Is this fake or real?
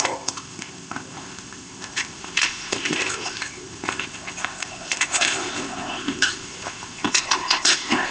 fake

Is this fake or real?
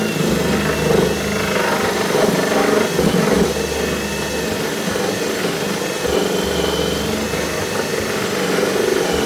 real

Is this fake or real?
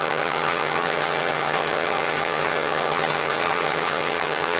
fake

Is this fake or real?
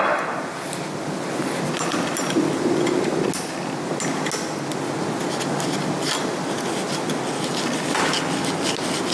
real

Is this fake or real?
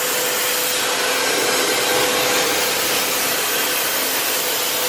real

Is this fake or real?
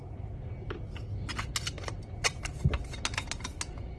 real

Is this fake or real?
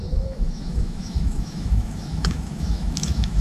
fake